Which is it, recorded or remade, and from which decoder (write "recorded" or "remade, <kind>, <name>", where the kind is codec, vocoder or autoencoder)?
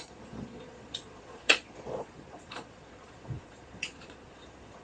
remade, vocoder, Vocos